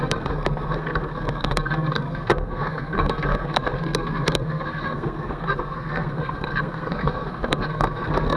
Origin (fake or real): fake